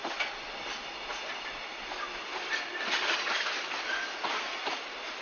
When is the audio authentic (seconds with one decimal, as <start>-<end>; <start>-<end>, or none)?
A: 0.0-2.1; 3.6-5.2